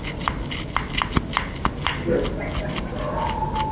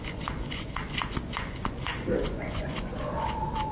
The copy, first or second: second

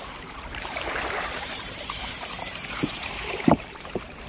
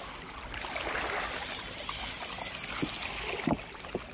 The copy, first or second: first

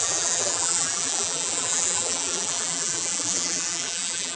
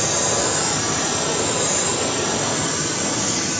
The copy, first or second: first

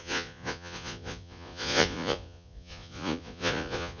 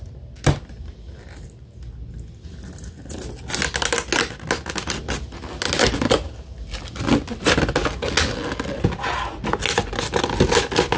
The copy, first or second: first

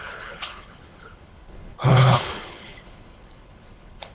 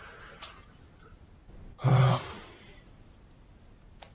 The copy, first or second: first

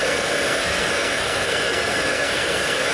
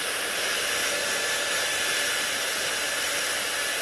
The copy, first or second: first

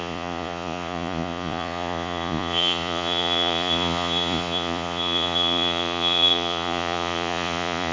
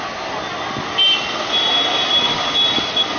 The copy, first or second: first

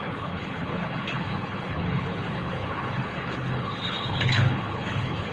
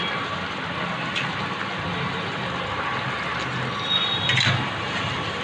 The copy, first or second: first